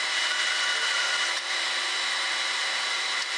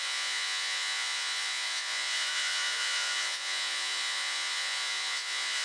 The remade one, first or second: second